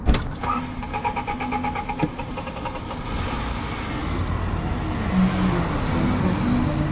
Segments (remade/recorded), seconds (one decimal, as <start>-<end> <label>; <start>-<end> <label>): 0.0-6.9 recorded